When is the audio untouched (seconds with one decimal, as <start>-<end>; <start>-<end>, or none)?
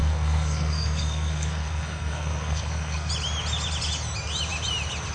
3.1-5.1